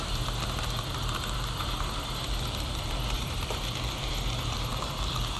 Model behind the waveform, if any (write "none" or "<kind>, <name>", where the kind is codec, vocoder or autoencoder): vocoder, BigVGAN v2